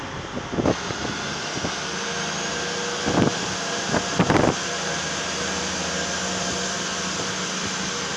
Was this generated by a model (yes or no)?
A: no